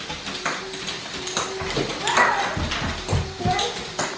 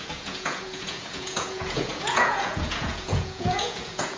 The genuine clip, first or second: first